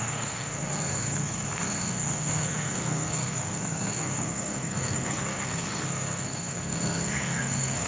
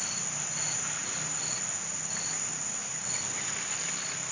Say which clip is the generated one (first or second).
first